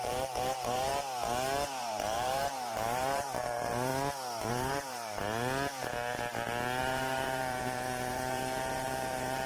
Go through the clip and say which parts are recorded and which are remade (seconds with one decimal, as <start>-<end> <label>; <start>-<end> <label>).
0.0-0.9 remade; 0.9-1.8 recorded; 1.8-3.9 remade; 3.9-4.5 recorded; 4.5-5.2 remade; 5.2-6.8 recorded; 6.8-9.5 remade